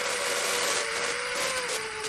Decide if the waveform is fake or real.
fake